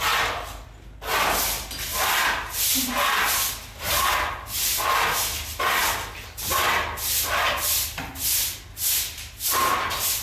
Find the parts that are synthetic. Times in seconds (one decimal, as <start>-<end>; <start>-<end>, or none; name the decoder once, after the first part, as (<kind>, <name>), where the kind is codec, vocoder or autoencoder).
none